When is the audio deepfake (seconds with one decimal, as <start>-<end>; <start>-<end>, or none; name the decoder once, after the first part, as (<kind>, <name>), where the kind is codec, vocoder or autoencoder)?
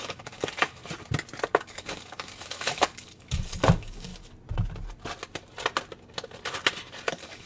0.0-0.8 (codec, DAC); 1.6-4.1; 7.1-7.5